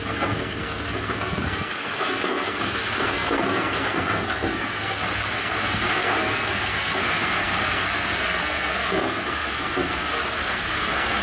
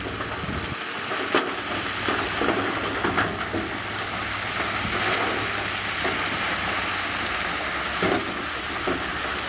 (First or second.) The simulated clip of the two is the first